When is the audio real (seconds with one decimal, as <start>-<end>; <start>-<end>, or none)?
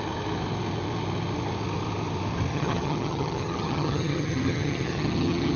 0.0-2.5